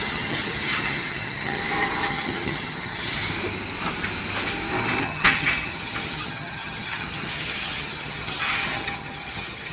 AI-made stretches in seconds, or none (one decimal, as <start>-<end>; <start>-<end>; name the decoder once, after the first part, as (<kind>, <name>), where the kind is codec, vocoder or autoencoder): 0.0-1.6 (vocoder, HiFi-GAN); 2.1-3.2; 5.0-9.7

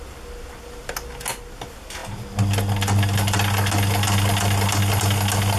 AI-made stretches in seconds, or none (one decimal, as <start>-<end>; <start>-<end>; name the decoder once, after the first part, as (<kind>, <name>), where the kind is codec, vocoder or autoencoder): none

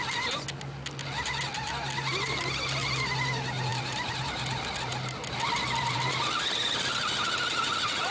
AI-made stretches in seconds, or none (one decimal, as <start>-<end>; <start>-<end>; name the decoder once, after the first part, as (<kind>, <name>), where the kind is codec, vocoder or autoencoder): 3.7-4.6 (vocoder, BigVGAN v2); 5.2-6.9

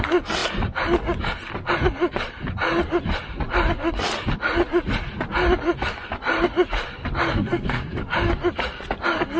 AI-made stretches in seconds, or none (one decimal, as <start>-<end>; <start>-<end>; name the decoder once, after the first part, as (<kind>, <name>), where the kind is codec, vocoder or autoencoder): 7.3-7.8 (codec, SNAC)

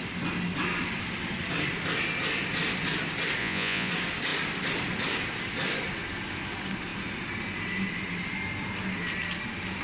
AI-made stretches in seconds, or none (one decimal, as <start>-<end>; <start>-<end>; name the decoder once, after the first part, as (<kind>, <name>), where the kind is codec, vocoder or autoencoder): 3.4-3.9 (vocoder, Vocos)